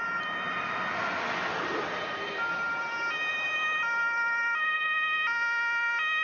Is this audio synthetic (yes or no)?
no